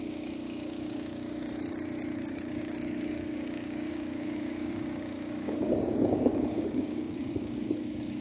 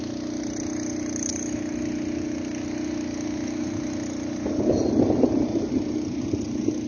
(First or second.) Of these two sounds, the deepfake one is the first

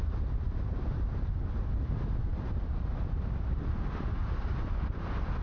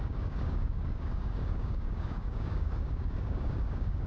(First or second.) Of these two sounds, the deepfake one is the second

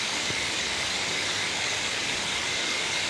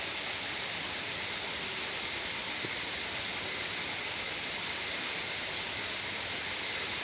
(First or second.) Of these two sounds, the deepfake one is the first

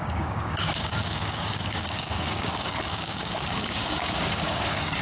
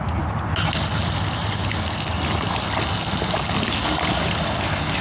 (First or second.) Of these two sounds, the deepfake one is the first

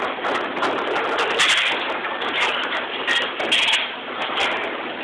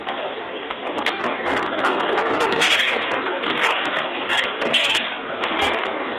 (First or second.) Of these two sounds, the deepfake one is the second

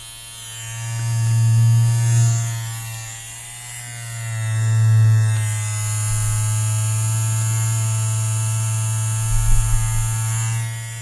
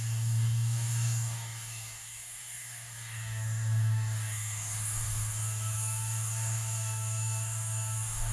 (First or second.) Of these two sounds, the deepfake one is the second